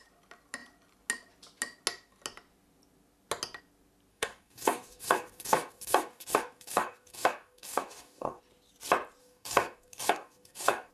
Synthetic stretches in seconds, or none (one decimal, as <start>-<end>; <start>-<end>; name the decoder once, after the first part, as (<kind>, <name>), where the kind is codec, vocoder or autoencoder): 4.1-8.4 (codec, DAC); 9.2-10.9